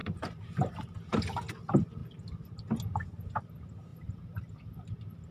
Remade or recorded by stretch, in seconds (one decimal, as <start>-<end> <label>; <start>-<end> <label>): 0.0-1.0 remade; 1.0-3.9 recorded; 3.9-4.8 remade; 4.8-5.3 recorded